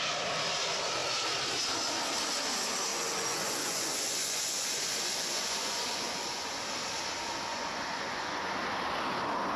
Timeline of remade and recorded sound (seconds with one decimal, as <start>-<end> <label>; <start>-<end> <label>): 0.0-2.9 recorded; 2.9-6.6 remade; 6.6-7.5 recorded; 7.5-8.5 remade; 8.5-9.6 recorded